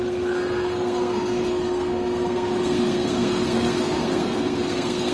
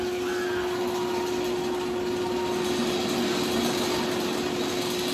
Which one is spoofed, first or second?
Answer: first